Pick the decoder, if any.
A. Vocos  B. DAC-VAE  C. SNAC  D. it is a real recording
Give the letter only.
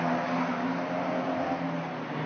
D